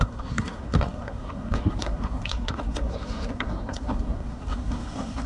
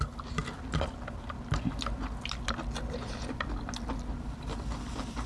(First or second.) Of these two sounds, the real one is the second